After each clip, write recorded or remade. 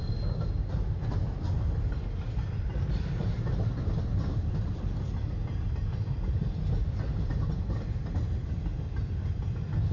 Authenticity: recorded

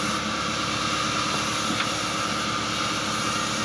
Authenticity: recorded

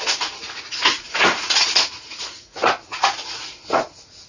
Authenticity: remade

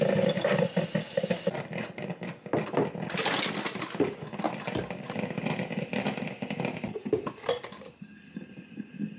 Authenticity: recorded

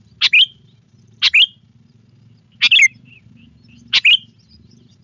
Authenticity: recorded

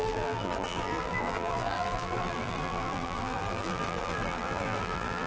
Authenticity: remade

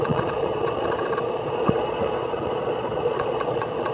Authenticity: remade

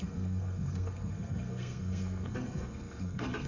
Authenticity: remade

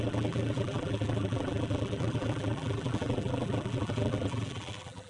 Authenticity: remade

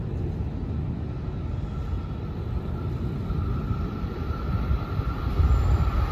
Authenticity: recorded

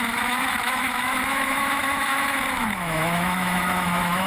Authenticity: remade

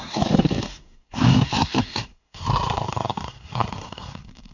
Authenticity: remade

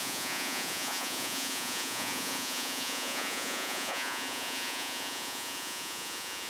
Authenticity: remade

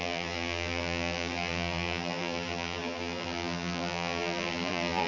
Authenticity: remade